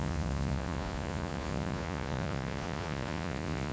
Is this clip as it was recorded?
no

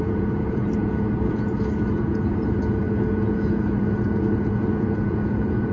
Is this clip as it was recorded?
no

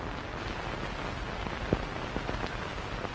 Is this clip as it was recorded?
yes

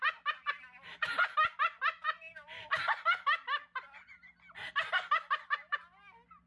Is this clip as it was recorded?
yes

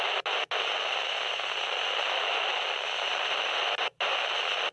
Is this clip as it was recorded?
yes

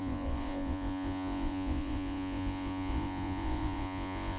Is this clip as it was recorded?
no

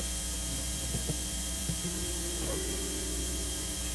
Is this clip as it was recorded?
no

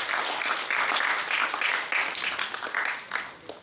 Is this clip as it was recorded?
yes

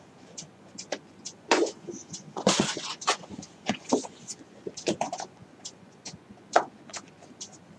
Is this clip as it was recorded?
no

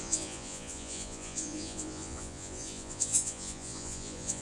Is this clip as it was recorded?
no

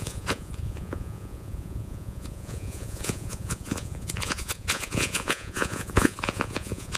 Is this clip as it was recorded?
no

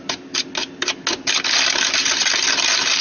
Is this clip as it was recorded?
yes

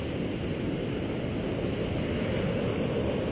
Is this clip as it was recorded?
yes